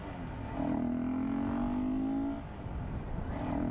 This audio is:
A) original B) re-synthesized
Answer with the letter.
A